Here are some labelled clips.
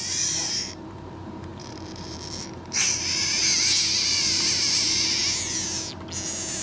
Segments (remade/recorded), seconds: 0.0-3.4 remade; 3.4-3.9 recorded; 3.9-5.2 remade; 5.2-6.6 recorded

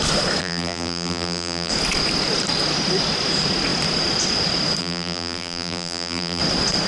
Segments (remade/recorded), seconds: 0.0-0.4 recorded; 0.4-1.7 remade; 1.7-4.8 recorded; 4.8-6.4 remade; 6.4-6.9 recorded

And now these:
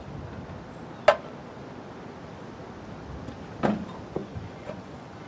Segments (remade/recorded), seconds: 0.0-4.2 recorded; 4.2-5.3 remade

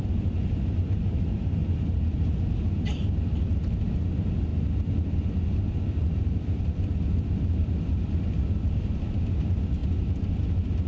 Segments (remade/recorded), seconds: 0.0-10.9 recorded